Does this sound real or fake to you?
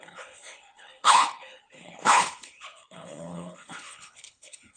fake